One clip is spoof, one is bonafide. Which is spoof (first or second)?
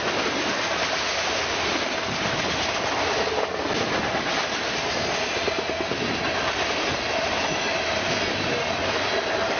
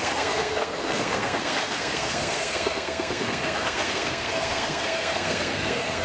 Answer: second